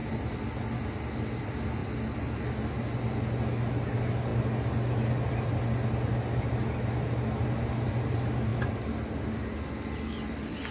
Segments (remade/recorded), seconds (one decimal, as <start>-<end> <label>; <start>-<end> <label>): 0.0-10.7 recorded